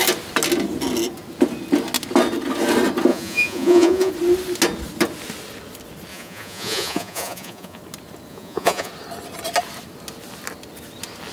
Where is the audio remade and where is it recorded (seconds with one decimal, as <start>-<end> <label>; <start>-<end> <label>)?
0.0-3.1 recorded; 3.1-4.1 remade; 4.1-6.1 recorded; 6.1-7.8 remade; 7.8-8.3 recorded; 8.3-8.9 remade; 8.9-11.3 recorded